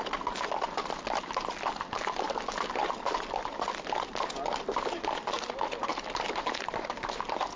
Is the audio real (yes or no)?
yes